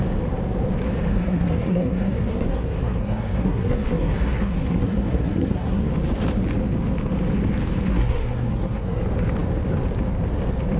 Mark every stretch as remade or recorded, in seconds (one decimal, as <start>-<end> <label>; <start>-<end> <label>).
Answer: 0.0-1.1 recorded; 1.1-5.9 remade; 5.9-7.9 recorded; 7.9-9.0 remade; 9.0-10.8 recorded